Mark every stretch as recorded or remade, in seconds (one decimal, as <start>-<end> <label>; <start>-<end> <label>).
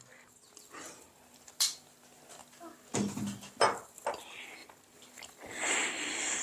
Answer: 0.0-6.4 recorded